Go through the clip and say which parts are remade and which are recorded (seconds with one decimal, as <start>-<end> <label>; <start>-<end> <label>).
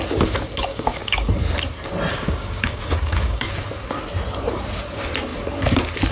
0.0-0.7 recorded; 0.7-1.3 remade; 1.3-2.1 recorded; 2.1-3.5 remade; 3.5-6.1 recorded